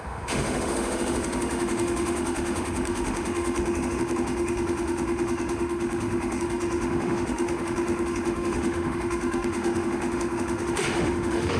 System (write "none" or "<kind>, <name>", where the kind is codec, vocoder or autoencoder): autoencoder, DAC-VAE